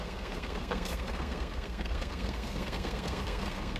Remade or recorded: remade